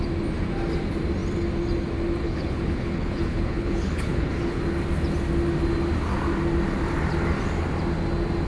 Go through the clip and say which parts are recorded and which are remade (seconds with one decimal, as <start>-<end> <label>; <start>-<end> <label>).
0.0-2.2 recorded; 2.2-4.6 remade; 4.6-8.5 recorded